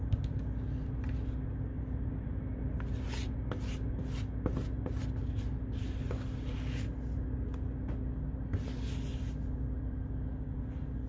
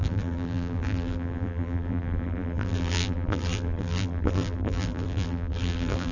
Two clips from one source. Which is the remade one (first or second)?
second